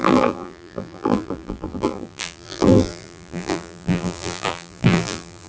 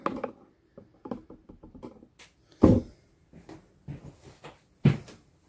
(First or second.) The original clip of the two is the second